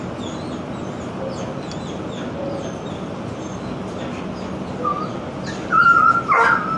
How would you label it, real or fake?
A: real